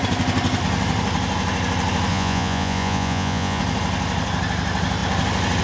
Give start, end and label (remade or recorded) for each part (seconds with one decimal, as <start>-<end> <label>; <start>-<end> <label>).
0.0-2.1 recorded; 2.1-3.6 remade; 3.6-5.6 recorded